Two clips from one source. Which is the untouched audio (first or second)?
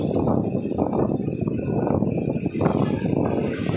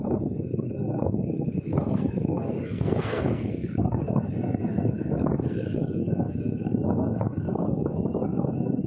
first